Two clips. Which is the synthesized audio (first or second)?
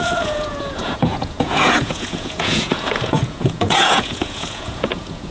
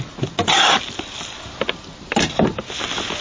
first